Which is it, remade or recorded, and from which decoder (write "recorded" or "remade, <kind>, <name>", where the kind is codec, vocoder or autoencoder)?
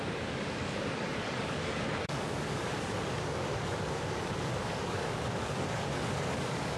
remade, codec, DAC